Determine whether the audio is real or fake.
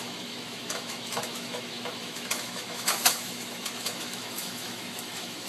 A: fake